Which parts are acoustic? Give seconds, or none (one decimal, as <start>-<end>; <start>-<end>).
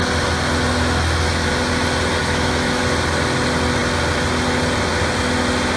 0.0-2.2; 2.8-5.8